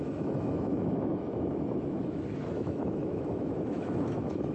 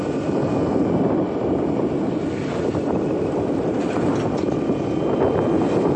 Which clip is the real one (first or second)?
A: second